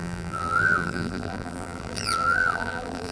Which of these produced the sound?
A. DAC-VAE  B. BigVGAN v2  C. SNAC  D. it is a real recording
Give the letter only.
B